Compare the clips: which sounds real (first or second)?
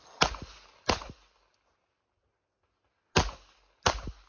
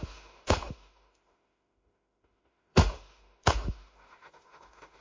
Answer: first